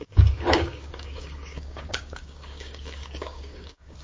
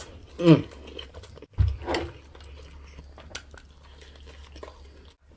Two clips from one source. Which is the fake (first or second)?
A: first